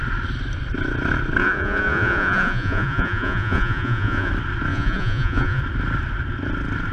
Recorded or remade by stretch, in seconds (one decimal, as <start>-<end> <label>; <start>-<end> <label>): 0.0-1.4 recorded; 1.4-4.3 remade; 4.3-4.7 recorded; 4.7-5.6 remade; 5.6-6.9 recorded